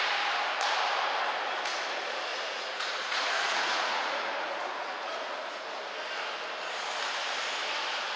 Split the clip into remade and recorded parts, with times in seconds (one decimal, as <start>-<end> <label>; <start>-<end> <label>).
0.0-2.3 recorded; 2.3-5.8 remade; 5.8-8.2 recorded